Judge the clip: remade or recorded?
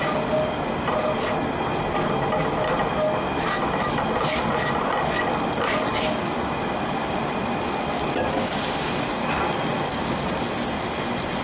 recorded